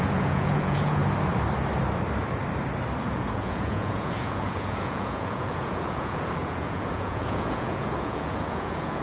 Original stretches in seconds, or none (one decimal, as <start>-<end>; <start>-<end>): 1.0-3.0